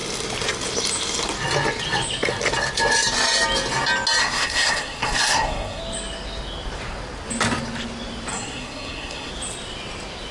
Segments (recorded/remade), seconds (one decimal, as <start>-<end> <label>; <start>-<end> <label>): 0.0-4.2 recorded; 4.2-5.8 remade; 5.8-8.3 recorded; 8.3-9.3 remade; 9.3-10.3 recorded